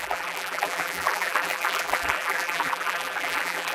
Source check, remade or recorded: remade